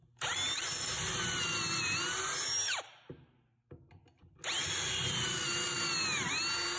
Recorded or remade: recorded